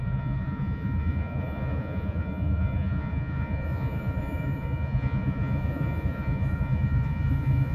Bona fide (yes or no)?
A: no